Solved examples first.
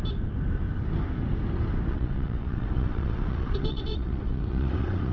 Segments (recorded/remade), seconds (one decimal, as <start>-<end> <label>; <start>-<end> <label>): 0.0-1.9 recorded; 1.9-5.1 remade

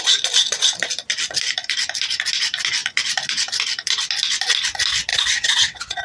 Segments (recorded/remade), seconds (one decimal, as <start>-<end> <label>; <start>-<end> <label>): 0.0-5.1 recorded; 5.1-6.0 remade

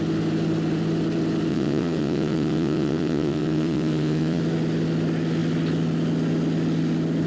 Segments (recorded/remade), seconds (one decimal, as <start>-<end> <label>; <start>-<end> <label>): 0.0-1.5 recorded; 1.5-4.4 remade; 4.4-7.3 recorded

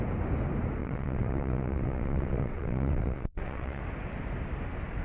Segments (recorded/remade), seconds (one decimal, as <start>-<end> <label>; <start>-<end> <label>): 0.0-0.8 recorded; 0.8-3.8 remade; 3.8-5.0 recorded

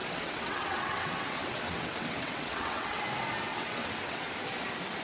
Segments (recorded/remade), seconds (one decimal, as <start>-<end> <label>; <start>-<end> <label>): 0.0-3.0 remade; 3.0-3.5 recorded; 3.5-4.3 remade; 4.3-5.0 recorded

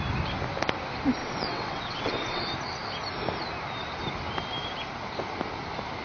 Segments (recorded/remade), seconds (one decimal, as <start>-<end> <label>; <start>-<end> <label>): 0.0-1.2 recorded; 1.2-2.4 remade; 2.4-6.0 recorded